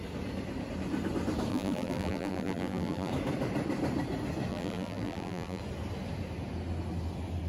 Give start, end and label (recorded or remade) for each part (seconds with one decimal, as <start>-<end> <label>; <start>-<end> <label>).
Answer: 0.0-1.5 recorded; 1.5-3.1 remade; 3.1-4.5 recorded; 4.5-5.6 remade; 5.6-7.5 recorded